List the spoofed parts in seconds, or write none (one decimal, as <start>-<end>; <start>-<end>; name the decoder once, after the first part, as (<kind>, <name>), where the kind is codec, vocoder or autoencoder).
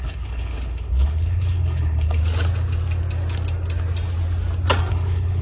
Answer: 0.0-2.2 (codec, HILCodec); 4.9-5.4